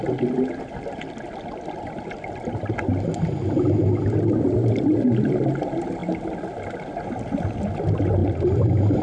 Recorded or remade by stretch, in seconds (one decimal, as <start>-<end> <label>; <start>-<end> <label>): 0.0-9.0 recorded